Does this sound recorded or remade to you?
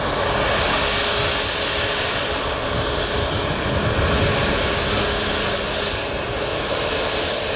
recorded